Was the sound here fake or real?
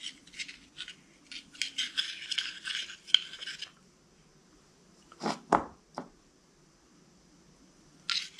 real